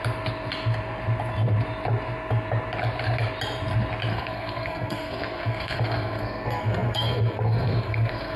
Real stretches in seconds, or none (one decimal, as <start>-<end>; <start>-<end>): 0.0-4.1